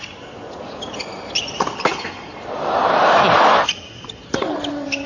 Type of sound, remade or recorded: recorded